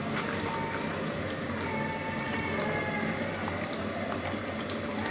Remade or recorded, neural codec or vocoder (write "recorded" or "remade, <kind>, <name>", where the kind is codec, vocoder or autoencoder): recorded